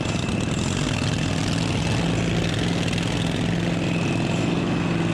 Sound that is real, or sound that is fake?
real